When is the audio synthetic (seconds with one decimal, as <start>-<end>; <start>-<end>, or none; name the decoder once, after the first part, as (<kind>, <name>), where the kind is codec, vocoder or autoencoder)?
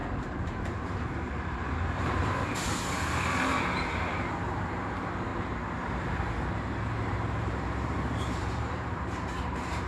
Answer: 0.0-5.3 (vocoder, BigVGAN v2); 6.5-9.9